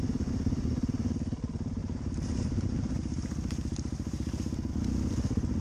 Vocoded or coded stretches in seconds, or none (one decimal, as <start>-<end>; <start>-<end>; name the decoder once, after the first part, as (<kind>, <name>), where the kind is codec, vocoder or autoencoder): 1.8-4.7 (vocoder, BigVGAN v2)